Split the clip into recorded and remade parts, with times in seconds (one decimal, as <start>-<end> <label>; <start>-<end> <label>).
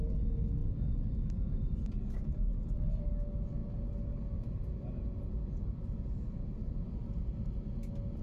0.0-8.2 recorded